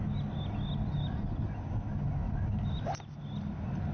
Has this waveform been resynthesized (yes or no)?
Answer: no